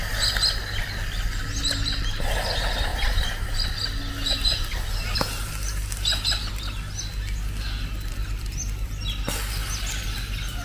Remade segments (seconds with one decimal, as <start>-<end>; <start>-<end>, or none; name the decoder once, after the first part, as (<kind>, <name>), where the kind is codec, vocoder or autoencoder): 8.1-8.9 (vocoder, BigVGAN v2)